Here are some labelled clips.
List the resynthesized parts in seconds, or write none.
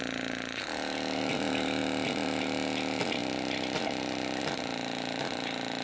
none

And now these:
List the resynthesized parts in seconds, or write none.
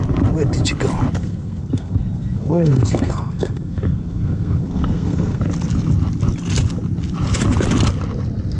1.2-5.4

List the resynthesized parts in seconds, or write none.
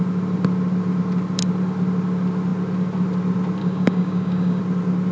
3.6-4.6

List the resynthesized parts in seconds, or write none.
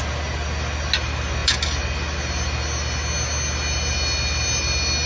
none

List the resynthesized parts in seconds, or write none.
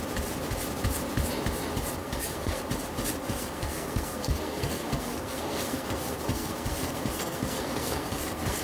2.0-2.6; 3.2-8.6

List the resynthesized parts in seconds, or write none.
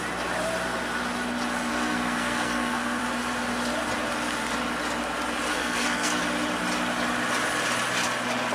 1.7-3.0; 5.5-6.2